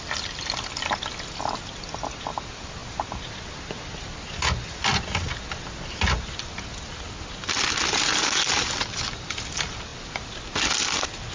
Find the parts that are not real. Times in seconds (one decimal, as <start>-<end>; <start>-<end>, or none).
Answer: none